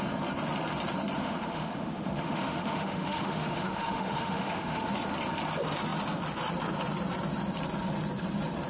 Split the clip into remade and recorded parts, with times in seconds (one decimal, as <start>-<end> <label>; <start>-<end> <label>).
0.0-1.2 recorded; 1.2-4.9 remade; 4.9-8.7 recorded